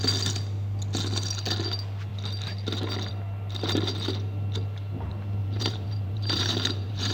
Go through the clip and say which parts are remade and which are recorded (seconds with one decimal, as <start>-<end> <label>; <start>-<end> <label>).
0.0-5.4 recorded; 5.4-7.1 remade